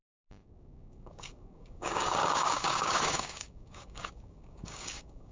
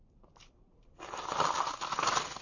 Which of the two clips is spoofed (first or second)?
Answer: first